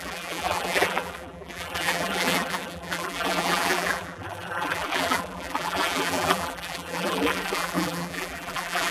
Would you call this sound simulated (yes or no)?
yes